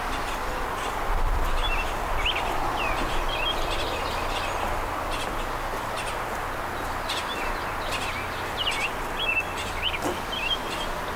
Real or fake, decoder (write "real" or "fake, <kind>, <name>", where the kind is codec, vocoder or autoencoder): real